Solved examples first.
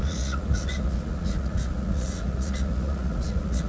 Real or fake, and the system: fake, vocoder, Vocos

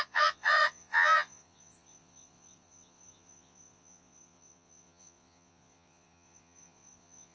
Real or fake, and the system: fake, vocoder, Vocos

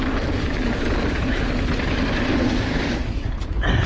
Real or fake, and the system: real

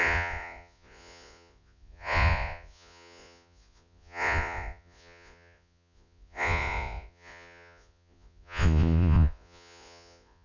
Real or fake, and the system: fake, vocoder, Vocos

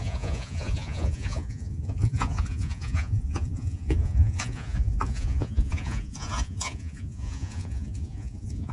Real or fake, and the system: fake, vocoder, Vocos